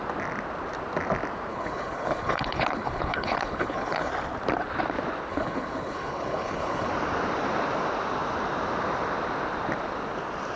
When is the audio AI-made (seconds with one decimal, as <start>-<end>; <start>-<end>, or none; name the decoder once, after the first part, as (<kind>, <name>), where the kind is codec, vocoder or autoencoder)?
1.5-4.1 (codec, HILCodec); 5.3-6.9